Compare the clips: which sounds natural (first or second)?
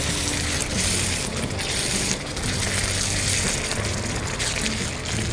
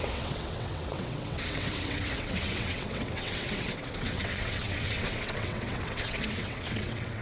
first